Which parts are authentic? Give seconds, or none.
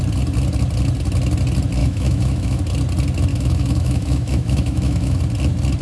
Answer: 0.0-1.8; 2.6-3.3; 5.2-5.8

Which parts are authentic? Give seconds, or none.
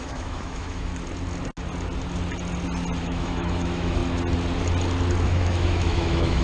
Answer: 0.9-3.0; 4.0-5.2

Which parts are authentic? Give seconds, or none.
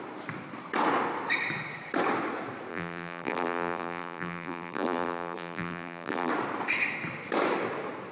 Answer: 0.0-2.7; 6.3-8.1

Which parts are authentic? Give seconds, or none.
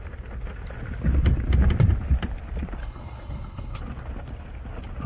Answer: 0.0-2.8; 3.8-5.1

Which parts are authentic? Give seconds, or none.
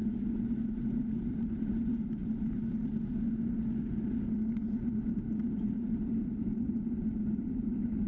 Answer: 0.0-1.0; 2.2-5.5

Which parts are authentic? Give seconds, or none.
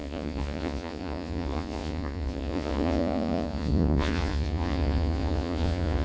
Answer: none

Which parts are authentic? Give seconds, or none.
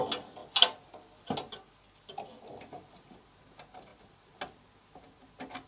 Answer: 0.0-5.7